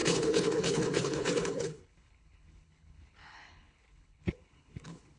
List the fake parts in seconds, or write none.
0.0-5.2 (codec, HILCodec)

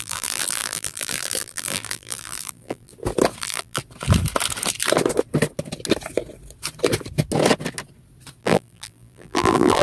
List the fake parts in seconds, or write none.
0.0-2.9 (vocoder, BigVGAN v2); 3.4-3.8; 8.4-9.8